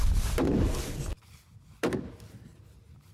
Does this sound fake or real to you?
fake